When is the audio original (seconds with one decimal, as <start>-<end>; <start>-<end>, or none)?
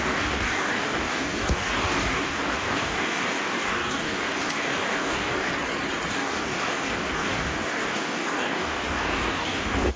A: 5.5-6.1